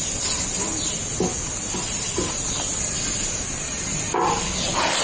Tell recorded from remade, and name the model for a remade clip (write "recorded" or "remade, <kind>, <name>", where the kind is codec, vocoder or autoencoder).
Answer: recorded